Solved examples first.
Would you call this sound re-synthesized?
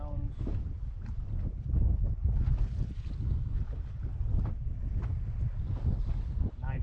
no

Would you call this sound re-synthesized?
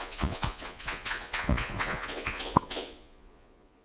yes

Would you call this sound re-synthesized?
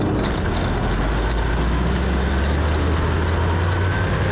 no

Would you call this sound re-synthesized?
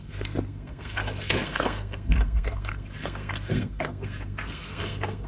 yes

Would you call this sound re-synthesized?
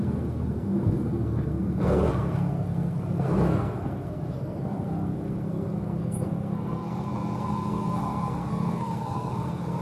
yes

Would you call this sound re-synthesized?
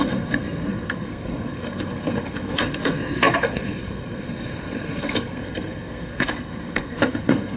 yes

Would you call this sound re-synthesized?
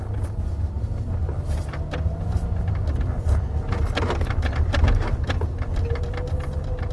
no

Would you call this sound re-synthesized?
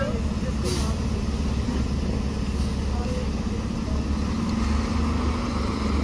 no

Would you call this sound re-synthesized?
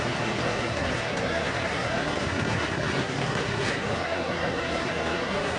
yes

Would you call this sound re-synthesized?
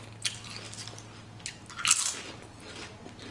no